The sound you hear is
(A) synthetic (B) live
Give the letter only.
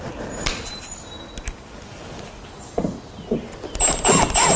B